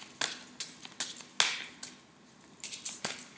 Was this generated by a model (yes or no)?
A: no